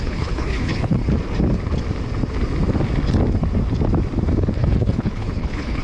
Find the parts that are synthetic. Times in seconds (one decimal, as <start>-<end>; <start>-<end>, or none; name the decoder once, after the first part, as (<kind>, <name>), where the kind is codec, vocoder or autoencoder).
0.0-1.0 (codec, HILCodec); 4.5-5.8